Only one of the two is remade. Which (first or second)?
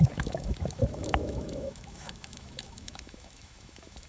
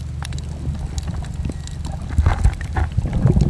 first